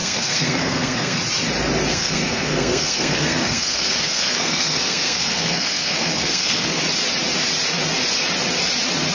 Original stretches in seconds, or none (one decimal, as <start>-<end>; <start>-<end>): 1.2-1.9; 6.8-9.1